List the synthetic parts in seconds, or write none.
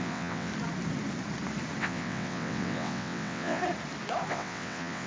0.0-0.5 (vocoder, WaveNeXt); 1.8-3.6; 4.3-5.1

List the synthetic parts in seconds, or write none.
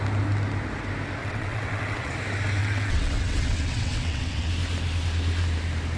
1.2-2.1 (vocoder, WaveNeXt); 2.6-4.5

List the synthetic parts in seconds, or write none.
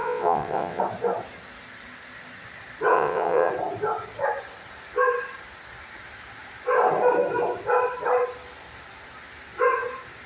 0.0-0.8 (vocoder, WaveNeXt); 2.9-3.5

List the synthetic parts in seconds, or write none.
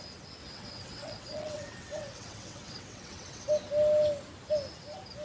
0.4-3.5 (vocoder, WaveNeXt)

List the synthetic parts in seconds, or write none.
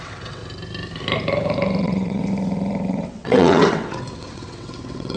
0.0-0.4 (vocoder, WaveNeXt); 1.8-2.2; 2.9-5.2